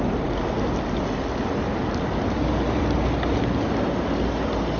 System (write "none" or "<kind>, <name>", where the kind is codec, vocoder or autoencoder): none